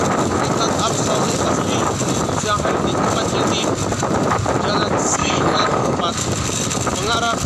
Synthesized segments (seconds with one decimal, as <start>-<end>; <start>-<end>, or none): 5.2-6.0